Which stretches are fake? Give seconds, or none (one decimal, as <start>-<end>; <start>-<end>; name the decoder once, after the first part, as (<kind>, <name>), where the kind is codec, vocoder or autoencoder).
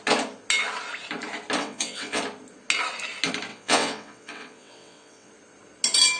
1.6-2.2 (vocoder, WaveNeXt); 3.5-5.3